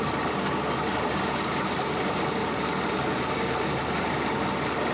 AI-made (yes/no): no